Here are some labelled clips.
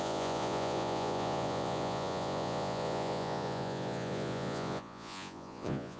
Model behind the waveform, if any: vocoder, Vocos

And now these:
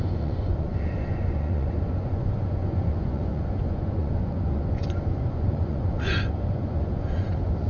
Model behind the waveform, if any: vocoder, Vocos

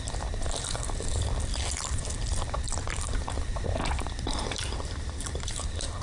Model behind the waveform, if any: vocoder, BigVGAN v2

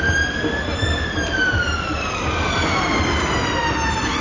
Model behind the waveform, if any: none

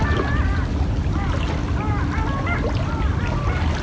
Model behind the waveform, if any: none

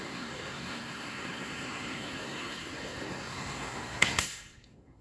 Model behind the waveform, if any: codec, SNAC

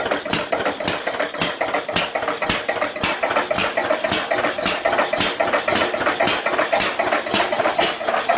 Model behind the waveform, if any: none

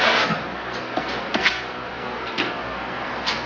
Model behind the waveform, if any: codec, SNAC